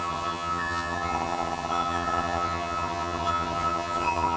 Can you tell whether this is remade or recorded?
remade